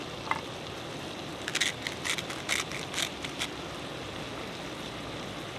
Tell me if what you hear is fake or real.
real